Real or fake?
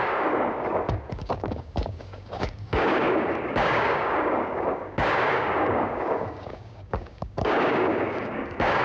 fake